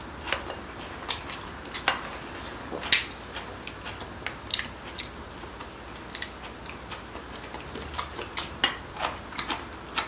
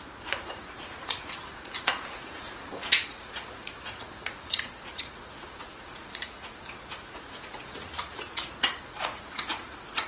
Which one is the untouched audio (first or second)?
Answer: first